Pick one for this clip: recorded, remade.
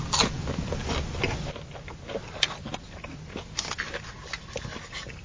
recorded